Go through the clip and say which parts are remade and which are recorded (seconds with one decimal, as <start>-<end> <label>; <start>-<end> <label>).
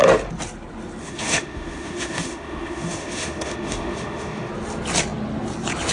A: 0.0-1.0 recorded; 1.0-4.5 remade; 4.5-5.9 recorded